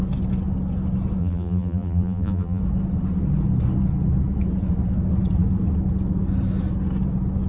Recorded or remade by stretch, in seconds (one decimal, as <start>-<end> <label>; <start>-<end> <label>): 0.0-1.2 recorded; 1.2-2.6 remade; 2.6-7.5 recorded